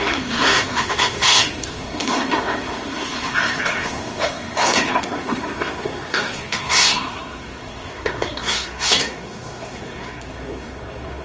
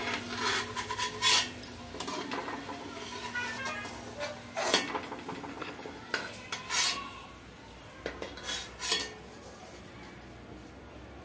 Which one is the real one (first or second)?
second